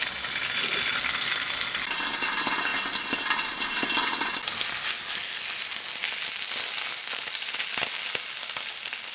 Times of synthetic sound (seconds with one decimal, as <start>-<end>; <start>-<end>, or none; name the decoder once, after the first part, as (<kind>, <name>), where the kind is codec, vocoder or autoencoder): none